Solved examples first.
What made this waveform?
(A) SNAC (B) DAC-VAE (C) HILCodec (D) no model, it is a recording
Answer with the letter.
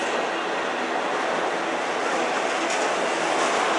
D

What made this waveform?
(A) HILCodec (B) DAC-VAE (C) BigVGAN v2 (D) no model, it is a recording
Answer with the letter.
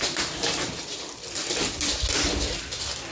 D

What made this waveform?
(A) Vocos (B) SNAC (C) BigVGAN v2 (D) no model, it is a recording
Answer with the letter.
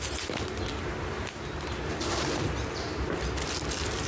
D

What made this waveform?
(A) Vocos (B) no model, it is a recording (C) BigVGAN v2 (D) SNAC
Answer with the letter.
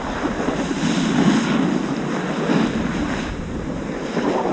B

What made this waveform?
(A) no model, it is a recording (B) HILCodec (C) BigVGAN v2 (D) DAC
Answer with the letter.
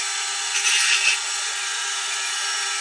C